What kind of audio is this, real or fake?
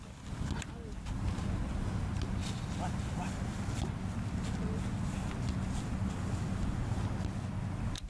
real